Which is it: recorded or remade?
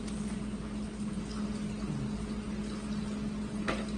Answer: recorded